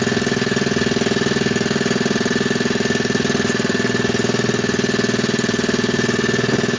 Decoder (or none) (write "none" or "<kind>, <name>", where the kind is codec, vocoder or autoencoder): none